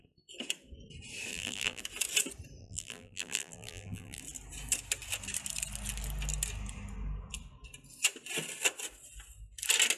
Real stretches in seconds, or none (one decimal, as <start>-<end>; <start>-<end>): 0.0-1.3; 1.8-2.6; 4.2-10.0